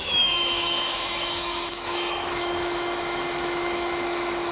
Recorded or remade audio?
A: remade